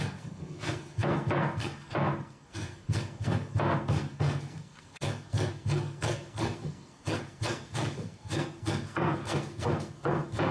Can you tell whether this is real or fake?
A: fake